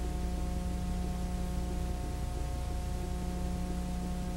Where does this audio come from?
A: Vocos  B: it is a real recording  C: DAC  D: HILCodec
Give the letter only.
B